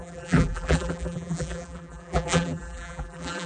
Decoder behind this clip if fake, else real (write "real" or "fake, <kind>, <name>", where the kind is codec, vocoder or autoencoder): fake, vocoder, BigVGAN v2